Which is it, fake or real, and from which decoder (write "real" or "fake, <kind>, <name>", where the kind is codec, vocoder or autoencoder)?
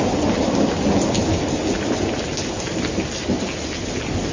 real